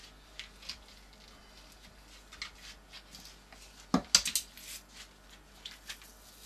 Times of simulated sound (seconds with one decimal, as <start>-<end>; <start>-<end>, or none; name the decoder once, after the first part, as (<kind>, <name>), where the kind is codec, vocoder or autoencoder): none